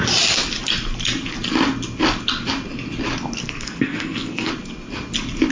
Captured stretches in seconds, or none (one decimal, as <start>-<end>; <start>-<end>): 0.0-3.4; 4.5-5.5